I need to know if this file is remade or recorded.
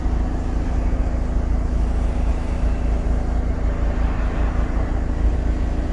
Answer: recorded